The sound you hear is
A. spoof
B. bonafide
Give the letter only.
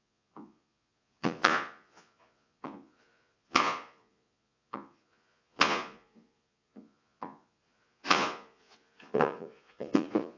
A